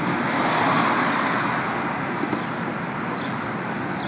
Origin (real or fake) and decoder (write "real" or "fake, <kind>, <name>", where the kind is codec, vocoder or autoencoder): real